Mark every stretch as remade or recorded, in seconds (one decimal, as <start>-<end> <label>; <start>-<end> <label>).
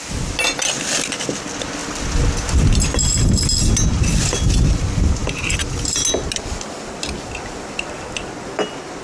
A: 0.0-9.0 recorded